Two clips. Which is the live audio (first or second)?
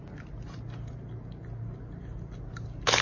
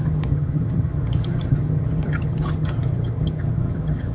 first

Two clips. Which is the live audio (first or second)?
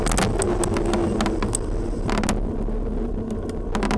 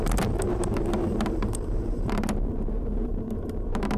first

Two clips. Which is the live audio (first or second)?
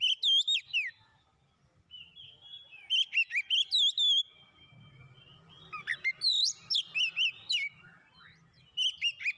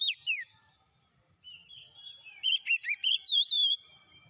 first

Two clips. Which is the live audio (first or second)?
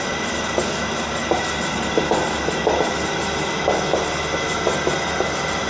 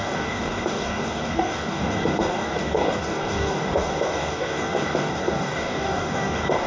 first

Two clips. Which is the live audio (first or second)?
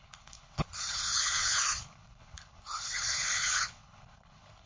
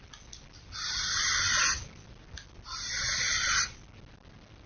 second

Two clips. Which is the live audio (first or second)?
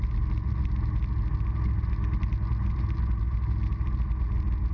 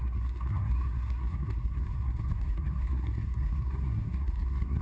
first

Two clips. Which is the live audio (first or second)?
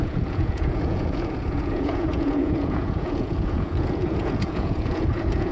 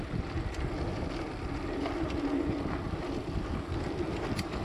second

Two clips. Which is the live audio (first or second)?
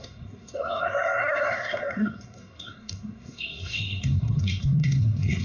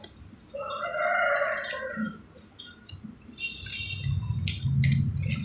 second